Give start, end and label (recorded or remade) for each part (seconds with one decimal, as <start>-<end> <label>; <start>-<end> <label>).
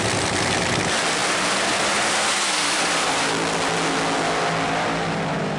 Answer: 0.0-1.2 recorded; 1.2-3.3 remade; 3.3-5.6 recorded